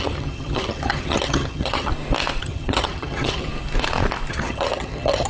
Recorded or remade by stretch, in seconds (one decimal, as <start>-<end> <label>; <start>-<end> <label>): 0.0-1.9 remade; 1.9-2.4 recorded; 2.4-3.5 remade; 3.5-4.3 recorded; 4.3-5.3 remade